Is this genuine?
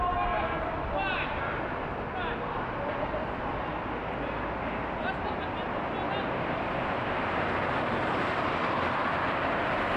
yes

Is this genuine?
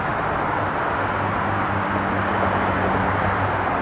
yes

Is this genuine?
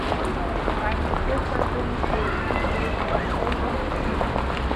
yes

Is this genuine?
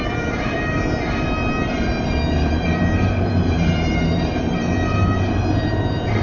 no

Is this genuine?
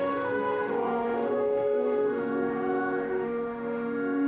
no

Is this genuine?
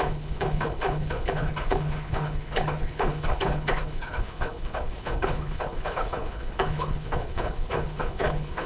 no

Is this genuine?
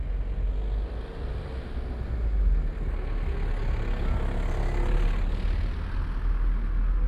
yes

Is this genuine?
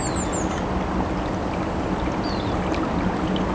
yes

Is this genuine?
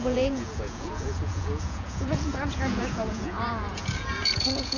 no